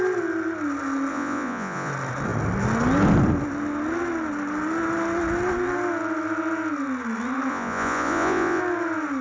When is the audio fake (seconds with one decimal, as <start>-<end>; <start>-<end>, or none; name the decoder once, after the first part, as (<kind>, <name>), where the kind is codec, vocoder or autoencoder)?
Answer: 1.1-1.9 (vocoder, Vocos); 7.5-8.6